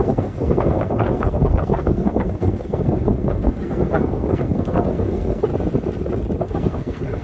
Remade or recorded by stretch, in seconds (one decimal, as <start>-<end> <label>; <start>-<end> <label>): 0.0-5.5 remade; 5.5-6.4 recorded; 6.4-7.2 remade